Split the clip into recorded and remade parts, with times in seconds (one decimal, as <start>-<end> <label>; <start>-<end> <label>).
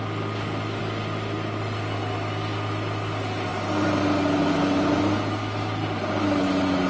0.0-6.9 recorded